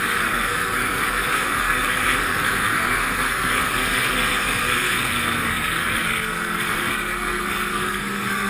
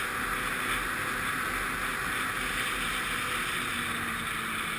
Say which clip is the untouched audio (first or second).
second